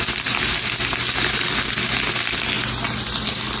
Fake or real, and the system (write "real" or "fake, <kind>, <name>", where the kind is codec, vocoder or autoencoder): real